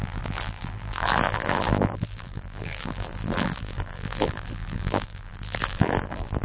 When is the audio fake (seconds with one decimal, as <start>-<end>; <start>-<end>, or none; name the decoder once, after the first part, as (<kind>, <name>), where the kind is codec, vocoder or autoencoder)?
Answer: 0.0-6.4 (vocoder, BigVGAN v2)